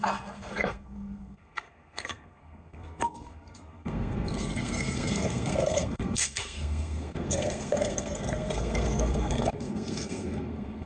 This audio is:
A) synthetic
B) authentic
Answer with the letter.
A